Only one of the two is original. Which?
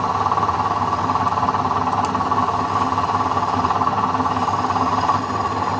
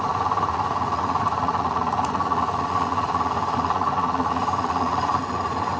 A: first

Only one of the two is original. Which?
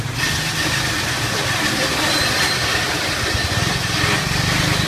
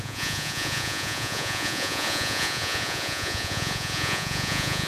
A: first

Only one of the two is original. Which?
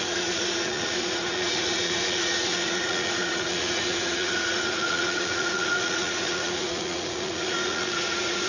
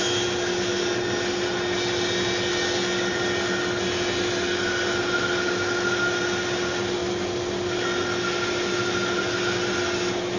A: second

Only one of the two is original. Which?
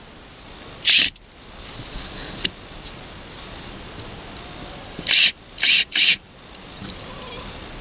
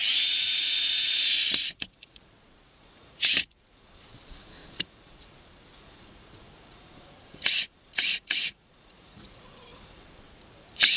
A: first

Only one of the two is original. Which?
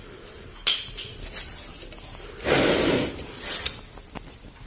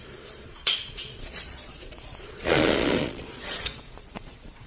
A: first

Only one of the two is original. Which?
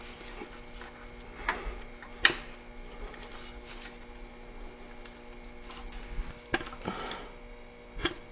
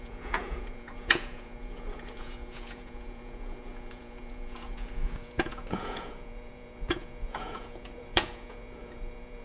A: first